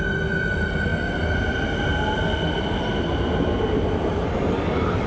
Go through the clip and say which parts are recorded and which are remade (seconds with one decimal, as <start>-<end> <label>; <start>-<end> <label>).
0.0-5.1 recorded